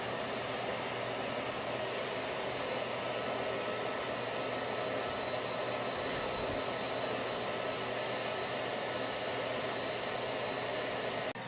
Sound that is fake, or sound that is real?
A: real